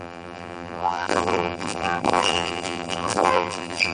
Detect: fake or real fake